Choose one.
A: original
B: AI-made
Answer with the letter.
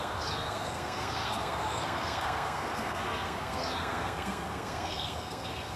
B